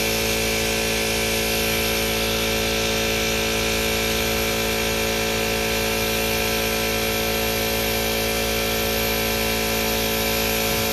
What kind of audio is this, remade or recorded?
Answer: recorded